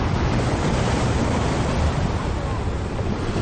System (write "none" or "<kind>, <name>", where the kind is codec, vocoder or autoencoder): none